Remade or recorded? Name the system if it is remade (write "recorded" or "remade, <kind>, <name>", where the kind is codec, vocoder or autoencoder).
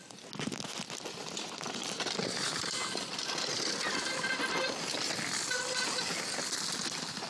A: recorded